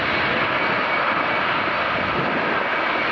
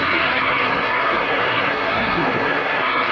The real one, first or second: first